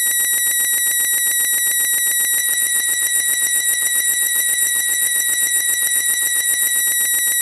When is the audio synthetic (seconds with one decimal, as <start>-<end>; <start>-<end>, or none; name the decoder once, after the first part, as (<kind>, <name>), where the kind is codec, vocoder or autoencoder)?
2.4-6.8 (autoencoder, DAC-VAE)